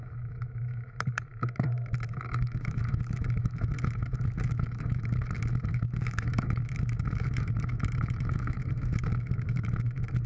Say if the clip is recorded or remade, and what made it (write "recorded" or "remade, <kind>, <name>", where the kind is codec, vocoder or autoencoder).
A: remade, autoencoder, DAC-VAE